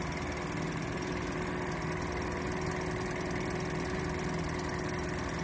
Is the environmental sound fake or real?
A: real